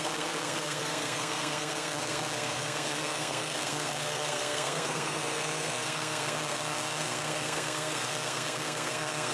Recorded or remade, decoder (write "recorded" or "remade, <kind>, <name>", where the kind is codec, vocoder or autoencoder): remade, codec, SNAC